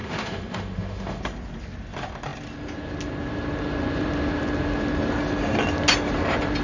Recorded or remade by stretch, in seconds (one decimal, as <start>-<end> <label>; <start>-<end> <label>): 0.0-1.2 remade; 1.2-6.6 recorded